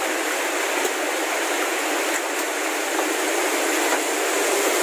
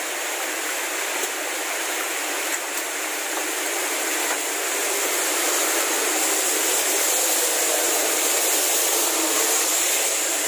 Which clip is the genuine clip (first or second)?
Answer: first